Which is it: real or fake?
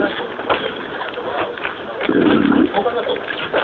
real